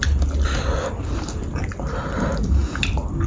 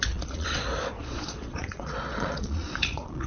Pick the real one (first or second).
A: first